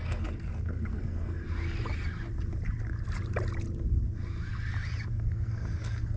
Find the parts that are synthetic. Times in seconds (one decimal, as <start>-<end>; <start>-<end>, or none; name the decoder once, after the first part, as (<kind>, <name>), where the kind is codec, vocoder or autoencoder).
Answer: 0.0-1.4 (codec, SNAC); 5.1-6.2